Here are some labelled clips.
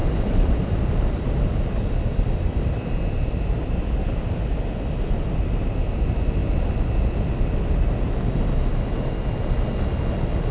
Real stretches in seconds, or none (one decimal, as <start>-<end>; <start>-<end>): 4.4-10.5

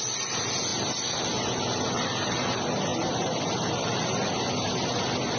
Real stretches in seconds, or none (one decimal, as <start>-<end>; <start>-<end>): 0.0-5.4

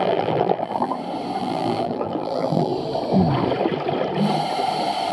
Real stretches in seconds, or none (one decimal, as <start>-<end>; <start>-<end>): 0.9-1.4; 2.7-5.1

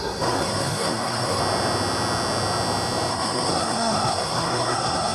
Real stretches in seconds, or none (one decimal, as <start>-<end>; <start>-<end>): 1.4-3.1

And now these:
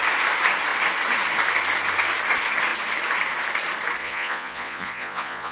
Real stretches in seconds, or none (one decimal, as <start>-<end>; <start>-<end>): 0.0-4.0

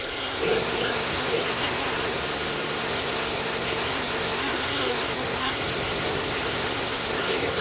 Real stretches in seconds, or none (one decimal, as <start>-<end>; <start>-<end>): 2.2-2.8